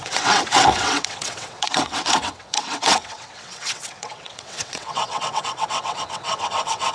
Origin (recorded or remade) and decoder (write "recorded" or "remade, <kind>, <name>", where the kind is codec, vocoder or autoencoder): remade, vocoder, WaveNeXt